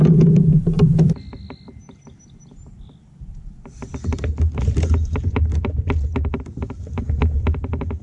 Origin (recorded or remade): recorded